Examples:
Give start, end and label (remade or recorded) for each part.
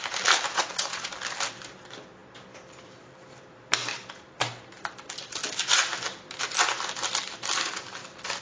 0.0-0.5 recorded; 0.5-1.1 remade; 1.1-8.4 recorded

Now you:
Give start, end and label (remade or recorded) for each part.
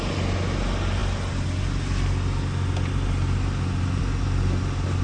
0.0-5.0 recorded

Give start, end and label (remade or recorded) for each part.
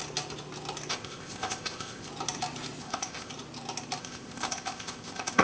0.0-0.9 recorded; 0.9-2.1 remade; 2.1-2.8 recorded; 2.8-3.3 remade; 3.3-4.0 recorded; 4.0-5.4 remade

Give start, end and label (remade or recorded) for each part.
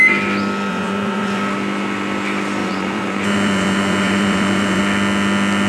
0.0-0.7 recorded; 0.7-1.4 remade; 1.4-2.6 recorded; 2.6-4.8 remade; 4.8-5.7 recorded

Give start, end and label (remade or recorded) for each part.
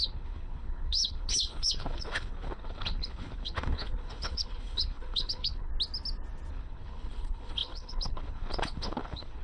0.0-5.7 remade; 5.7-6.5 recorded; 6.5-9.4 remade